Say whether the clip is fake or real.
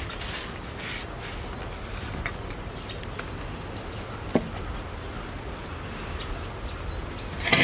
real